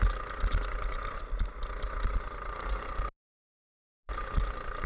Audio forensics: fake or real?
real